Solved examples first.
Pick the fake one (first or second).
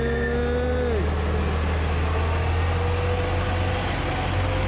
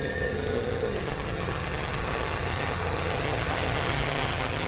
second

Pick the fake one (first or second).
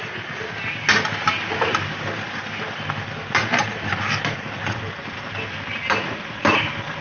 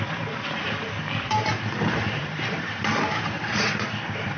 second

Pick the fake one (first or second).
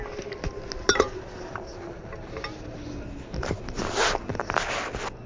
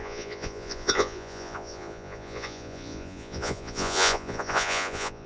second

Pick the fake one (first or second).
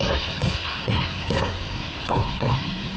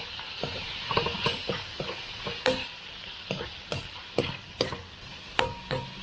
first